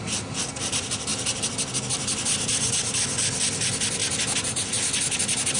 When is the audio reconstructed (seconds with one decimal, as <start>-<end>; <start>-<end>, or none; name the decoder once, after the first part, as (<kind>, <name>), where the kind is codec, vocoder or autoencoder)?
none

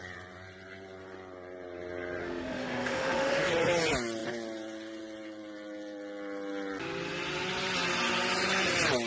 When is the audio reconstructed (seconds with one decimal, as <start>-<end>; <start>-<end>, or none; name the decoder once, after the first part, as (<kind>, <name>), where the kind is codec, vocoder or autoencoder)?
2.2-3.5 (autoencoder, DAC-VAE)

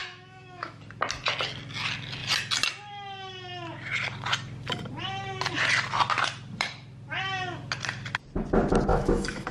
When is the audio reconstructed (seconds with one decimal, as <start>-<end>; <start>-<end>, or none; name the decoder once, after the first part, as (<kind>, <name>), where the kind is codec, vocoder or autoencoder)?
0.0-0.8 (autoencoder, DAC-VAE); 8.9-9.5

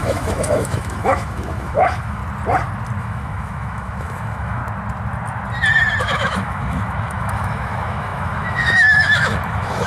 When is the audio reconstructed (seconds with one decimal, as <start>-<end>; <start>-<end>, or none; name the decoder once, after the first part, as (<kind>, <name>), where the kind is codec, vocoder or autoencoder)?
0.0-2.2 (autoencoder, DAC-VAE); 3.0-4.6; 6.0-9.9

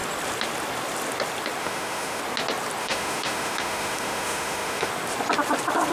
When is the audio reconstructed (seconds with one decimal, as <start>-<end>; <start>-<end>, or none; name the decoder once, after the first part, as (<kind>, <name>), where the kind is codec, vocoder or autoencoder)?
1.6-2.2 (autoencoder, DAC-VAE); 2.8-4.9

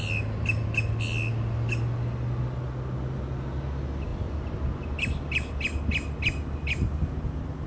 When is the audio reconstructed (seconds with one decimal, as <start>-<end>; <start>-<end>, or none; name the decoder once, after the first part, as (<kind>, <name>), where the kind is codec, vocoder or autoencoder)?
none

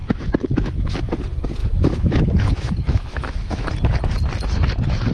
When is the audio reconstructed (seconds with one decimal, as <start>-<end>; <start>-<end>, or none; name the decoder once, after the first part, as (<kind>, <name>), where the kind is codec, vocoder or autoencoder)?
0.0-0.9 (autoencoder, DAC-VAE); 1.6-3.7

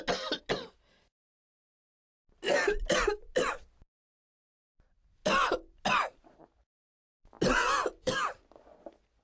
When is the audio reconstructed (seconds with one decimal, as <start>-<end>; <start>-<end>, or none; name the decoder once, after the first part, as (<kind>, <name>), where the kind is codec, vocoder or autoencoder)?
none